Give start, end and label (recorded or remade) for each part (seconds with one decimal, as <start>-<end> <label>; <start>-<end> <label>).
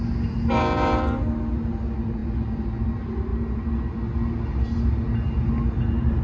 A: 0.0-6.2 recorded